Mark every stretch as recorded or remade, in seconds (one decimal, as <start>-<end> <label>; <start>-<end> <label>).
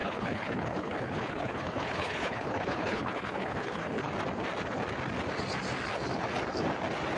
0.0-4.1 remade; 4.1-7.2 recorded